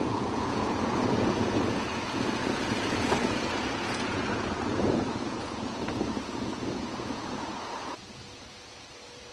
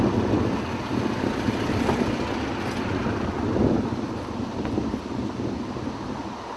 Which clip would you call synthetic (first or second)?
first